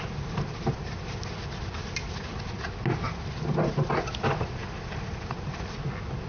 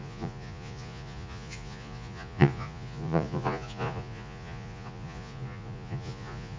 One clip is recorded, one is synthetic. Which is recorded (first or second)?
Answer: first